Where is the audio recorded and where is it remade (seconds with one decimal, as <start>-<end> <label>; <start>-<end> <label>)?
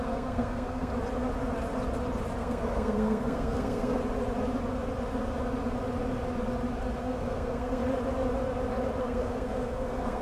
0.0-0.9 remade; 0.9-2.4 recorded; 2.4-4.0 remade; 4.0-7.0 recorded; 7.0-7.8 remade; 7.8-9.0 recorded; 9.0-10.2 remade